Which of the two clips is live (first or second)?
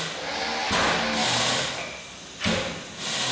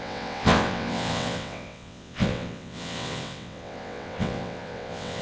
first